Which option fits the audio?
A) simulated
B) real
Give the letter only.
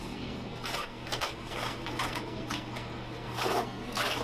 A